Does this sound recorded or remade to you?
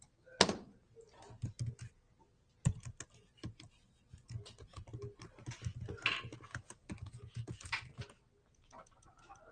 recorded